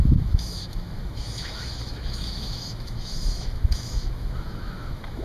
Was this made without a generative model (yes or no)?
no